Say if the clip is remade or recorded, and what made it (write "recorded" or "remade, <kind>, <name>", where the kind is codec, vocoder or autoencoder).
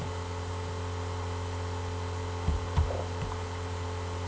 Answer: recorded